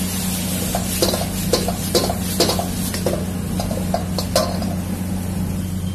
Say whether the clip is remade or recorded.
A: recorded